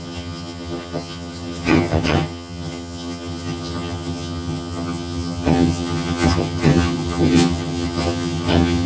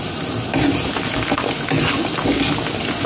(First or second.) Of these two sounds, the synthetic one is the first